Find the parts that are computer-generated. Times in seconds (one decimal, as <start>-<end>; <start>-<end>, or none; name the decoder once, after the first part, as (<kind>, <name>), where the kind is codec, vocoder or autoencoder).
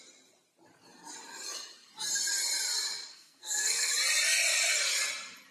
3.1-3.9 (codec, SNAC)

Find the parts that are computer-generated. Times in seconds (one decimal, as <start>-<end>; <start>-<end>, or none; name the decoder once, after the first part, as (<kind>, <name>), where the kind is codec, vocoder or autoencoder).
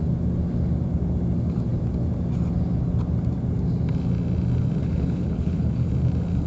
4.8-5.9 (codec, HILCodec)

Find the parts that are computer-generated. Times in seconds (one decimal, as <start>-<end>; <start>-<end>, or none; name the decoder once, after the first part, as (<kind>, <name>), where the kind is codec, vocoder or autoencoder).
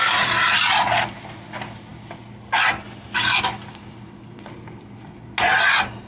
none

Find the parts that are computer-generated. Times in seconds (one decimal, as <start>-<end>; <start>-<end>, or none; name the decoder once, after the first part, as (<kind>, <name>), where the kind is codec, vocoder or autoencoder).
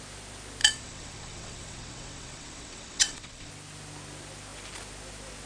0.6-3.5 (vocoder, WaveNeXt)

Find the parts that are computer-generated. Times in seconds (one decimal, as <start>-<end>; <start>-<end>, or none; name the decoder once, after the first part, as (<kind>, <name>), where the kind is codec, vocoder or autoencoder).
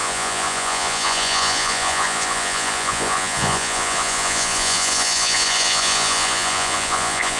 0.0-7.4 (vocoder, Vocos)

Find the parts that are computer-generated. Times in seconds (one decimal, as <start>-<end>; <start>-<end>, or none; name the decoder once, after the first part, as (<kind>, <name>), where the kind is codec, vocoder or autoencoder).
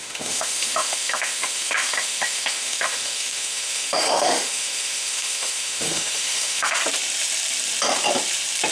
0.0-6.8 (autoencoder, DAC-VAE)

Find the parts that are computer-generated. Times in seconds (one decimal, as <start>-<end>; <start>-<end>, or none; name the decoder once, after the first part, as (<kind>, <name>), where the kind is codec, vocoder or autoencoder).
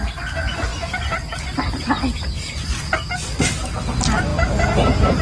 none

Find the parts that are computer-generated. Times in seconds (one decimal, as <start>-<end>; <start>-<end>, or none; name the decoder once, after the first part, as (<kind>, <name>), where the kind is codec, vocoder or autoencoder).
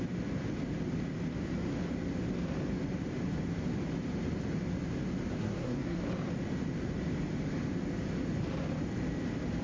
5.4-6.0 (codec, SNAC)